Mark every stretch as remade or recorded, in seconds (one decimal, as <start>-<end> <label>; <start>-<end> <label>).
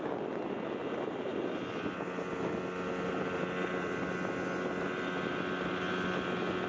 0.0-6.7 recorded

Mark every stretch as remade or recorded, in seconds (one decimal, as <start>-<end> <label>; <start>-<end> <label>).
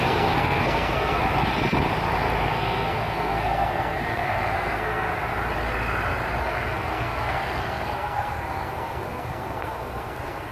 0.0-1.2 remade; 1.2-2.5 recorded; 2.5-5.1 remade; 5.1-6.4 recorded; 6.4-10.5 remade